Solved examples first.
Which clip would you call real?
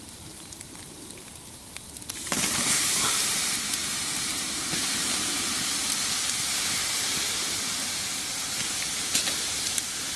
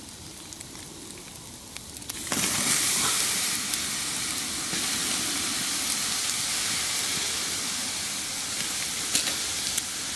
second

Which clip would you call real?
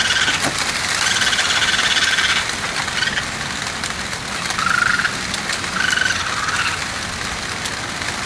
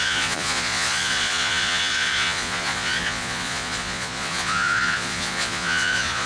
first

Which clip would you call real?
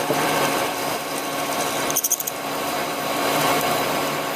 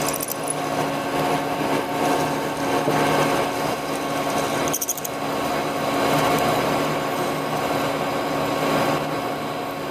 second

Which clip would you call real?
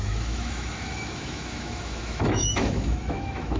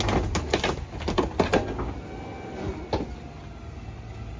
second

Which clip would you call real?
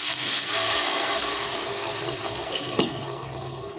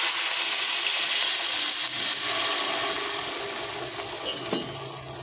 second